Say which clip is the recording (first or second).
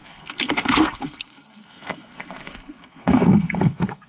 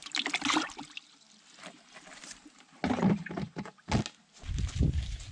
second